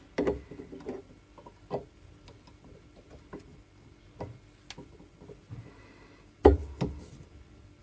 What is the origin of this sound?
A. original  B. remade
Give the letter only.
A